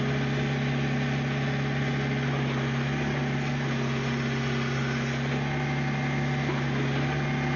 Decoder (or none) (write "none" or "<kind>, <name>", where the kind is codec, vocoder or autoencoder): none